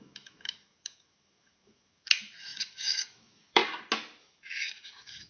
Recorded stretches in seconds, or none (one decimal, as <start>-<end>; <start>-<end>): 3.6-4.2